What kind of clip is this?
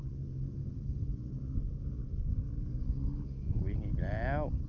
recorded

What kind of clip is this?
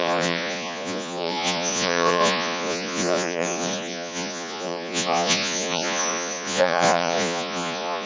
remade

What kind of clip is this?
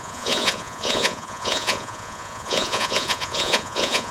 remade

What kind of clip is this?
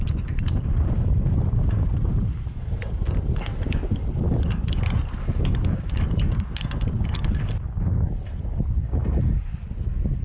recorded